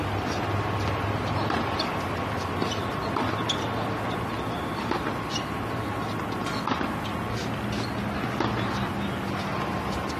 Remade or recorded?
recorded